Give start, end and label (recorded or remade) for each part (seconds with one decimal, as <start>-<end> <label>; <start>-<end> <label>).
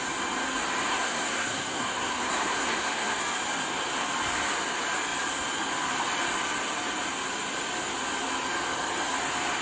0.0-0.9 recorded; 0.9-3.2 remade; 3.2-9.6 recorded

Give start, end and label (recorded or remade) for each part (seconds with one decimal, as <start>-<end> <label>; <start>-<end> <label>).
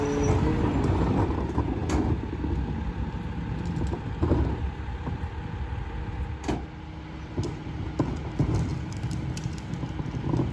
0.0-10.5 recorded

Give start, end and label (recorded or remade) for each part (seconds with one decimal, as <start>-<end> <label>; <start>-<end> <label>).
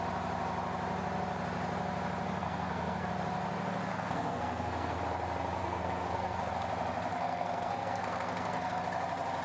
0.0-2.4 recorded; 2.4-3.1 remade; 3.1-3.9 recorded; 3.9-5.0 remade; 5.0-5.6 recorded; 5.6-6.5 remade; 6.5-7.1 recorded; 7.1-8.8 remade; 8.8-9.4 recorded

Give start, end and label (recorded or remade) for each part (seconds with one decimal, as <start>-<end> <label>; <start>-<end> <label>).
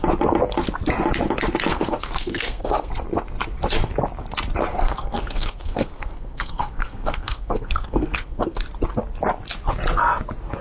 0.0-1.7 recorded; 1.7-2.9 remade; 2.9-4.7 recorded; 4.7-8.6 remade; 8.6-10.6 recorded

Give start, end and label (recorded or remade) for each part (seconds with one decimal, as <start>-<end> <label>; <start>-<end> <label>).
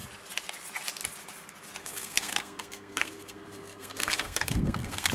0.0-1.8 recorded; 1.8-5.1 remade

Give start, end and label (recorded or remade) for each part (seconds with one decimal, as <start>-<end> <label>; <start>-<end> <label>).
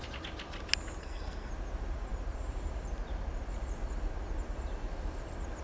0.0-1.0 recorded; 1.0-1.5 remade; 1.5-5.6 recorded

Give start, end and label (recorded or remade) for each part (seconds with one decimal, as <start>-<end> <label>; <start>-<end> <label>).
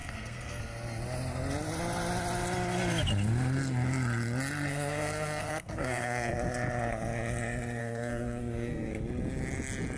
0.0-0.6 remade; 0.6-4.7 recorded; 4.7-6.3 remade; 6.3-7.8 recorded; 7.8-8.9 remade; 8.9-10.0 recorded